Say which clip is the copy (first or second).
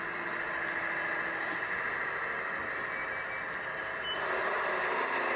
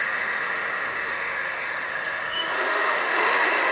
second